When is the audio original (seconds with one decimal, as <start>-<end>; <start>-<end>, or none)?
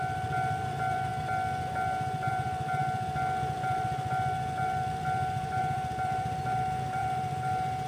1.1-2.3